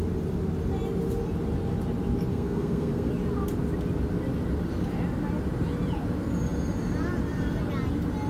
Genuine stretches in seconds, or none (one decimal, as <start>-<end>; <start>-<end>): 0.0-2.3; 3.1-8.3